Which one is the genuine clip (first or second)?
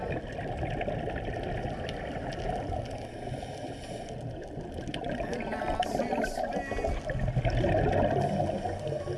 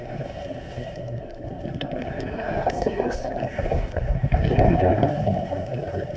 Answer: first